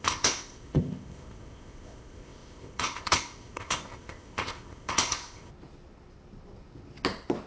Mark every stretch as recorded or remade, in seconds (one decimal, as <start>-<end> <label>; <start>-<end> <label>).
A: 0.0-5.5 remade; 5.5-7.5 recorded